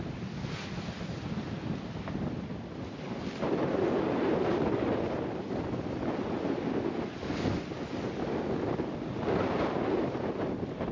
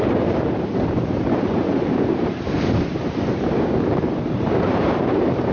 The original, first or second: first